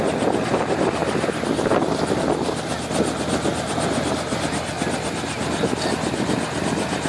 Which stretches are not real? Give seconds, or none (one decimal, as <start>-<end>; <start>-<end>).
none